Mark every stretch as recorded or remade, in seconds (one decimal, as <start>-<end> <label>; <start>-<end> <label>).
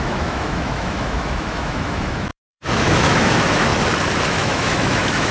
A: 0.0-3.7 remade; 3.7-4.3 recorded; 4.3-5.3 remade